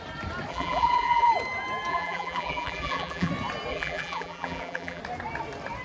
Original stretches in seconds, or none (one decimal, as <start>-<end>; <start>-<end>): 0.0-0.5; 1.3-1.9; 3.3-3.7; 5.0-5.8